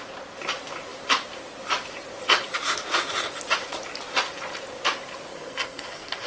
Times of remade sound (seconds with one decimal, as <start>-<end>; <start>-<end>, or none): 5.3-6.3